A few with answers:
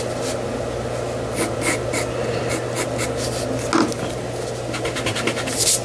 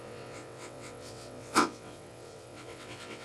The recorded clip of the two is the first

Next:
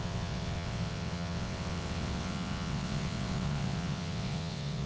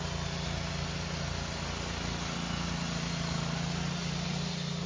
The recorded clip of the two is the second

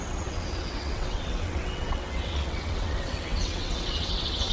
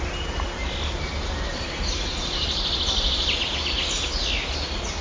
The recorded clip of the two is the second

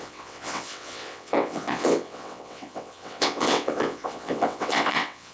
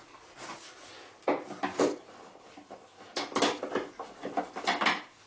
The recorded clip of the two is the second